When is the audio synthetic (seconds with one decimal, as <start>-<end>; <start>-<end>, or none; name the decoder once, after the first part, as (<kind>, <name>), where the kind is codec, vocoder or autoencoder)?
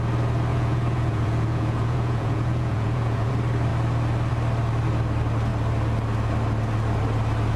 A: 0.5-3.3 (vocoder, Vocos)